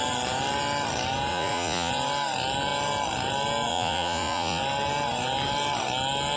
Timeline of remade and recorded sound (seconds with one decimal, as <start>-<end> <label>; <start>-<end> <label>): 0.0-1.3 recorded; 1.3-1.9 remade; 1.9-3.7 recorded; 3.7-4.6 remade; 4.6-6.4 recorded